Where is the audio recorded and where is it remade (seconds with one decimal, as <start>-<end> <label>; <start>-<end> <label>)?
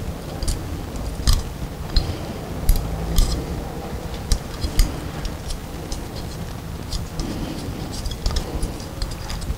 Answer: 0.0-5.6 recorded; 5.6-6.5 remade; 6.5-9.6 recorded